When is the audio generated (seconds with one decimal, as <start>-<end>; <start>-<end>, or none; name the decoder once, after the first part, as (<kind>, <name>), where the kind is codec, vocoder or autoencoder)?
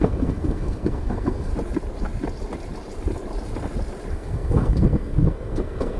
0.0-1.5 (codec, SNAC); 4.1-6.0